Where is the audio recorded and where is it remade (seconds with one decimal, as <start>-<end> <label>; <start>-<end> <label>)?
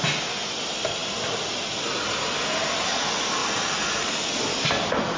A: 0.0-5.2 recorded